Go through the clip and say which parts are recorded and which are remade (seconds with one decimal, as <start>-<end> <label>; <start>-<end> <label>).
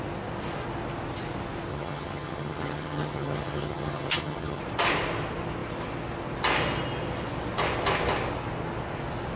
0.0-1.7 recorded; 1.7-4.6 remade; 4.6-9.4 recorded